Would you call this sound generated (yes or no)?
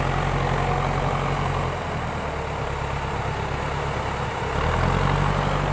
no